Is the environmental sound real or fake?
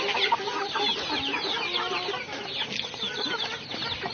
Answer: real